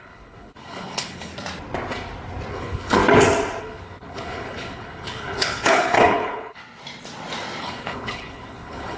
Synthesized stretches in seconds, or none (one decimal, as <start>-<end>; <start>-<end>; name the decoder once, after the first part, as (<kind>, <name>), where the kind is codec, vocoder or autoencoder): 0.0-1.3 (codec, HILCodec); 2.5-3.0; 3.6-6.6; 7.6-9.0